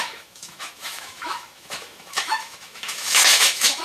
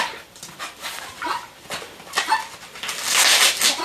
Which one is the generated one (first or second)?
first